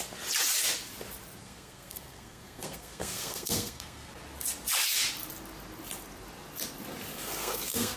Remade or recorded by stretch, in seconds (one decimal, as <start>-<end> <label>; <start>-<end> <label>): 0.0-1.4 recorded; 1.4-4.1 remade; 4.1-7.1 recorded; 7.1-8.0 remade